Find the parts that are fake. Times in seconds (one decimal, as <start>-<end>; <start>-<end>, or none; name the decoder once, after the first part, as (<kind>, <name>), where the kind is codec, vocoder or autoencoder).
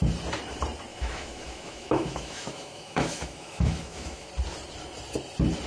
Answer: 0.9-4.3 (autoencoder, DAC-VAE)